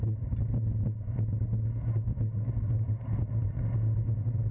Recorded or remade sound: recorded